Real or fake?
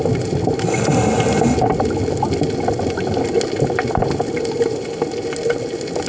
real